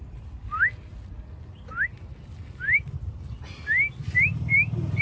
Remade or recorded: recorded